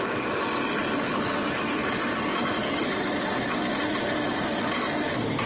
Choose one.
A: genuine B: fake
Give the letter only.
A